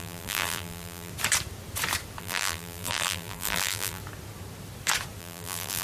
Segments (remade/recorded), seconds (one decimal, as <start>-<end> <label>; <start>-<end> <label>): 0.0-1.1 remade; 1.1-2.2 recorded; 2.2-4.0 remade; 4.0-5.2 recorded; 5.2-5.8 remade